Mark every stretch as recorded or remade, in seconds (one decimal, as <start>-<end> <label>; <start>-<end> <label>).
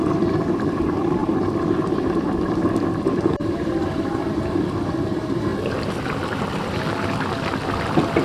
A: 0.0-1.2 recorded; 1.2-4.8 remade; 4.8-8.2 recorded